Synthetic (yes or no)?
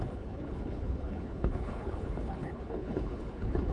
yes